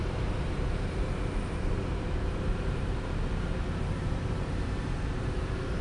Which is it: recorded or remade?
remade